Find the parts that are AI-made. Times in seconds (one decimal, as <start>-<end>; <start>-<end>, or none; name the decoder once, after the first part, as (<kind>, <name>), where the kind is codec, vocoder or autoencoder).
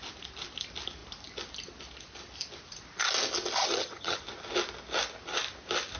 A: 3.6-4.2 (vocoder, HiFi-GAN)